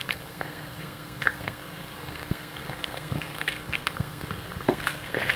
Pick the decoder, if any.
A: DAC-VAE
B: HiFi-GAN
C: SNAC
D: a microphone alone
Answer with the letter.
C